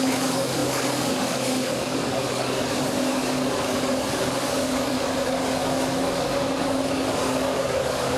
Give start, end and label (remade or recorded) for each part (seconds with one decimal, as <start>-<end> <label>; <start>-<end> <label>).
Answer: 0.0-8.2 remade